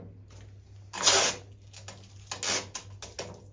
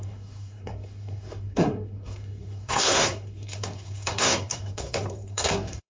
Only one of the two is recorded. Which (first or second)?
first